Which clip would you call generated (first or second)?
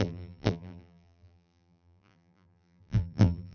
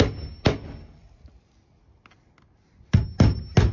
first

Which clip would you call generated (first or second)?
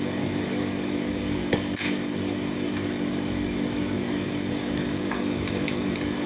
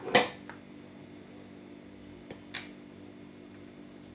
first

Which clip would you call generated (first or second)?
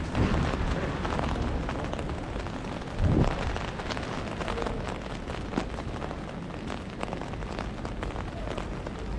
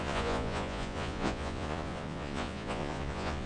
second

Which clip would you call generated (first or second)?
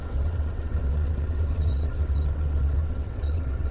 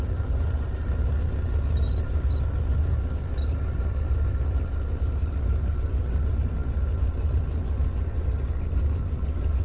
first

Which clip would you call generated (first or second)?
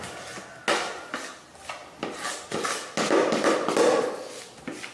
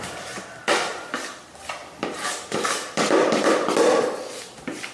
second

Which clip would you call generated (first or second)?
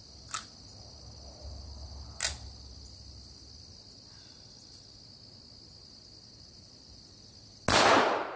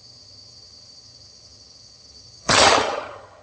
second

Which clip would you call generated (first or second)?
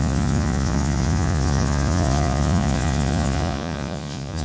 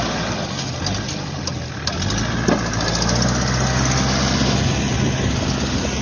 first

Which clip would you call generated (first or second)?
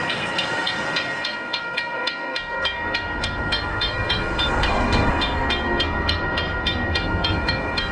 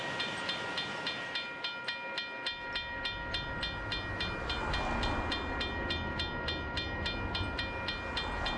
first